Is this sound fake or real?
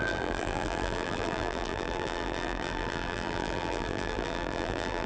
fake